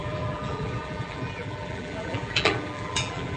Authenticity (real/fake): fake